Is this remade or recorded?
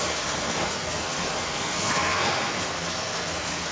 remade